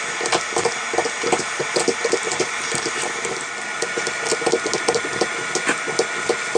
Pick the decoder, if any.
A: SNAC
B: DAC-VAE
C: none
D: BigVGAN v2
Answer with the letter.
C